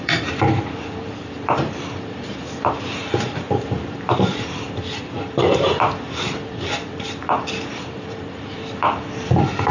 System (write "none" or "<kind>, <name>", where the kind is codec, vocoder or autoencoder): vocoder, BigVGAN v2